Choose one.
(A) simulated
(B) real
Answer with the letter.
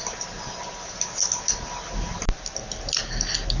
B